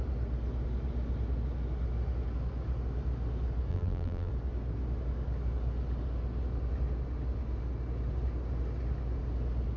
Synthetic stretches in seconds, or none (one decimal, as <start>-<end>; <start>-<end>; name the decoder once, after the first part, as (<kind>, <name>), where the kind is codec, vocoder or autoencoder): 3.7-4.3 (vocoder, BigVGAN v2)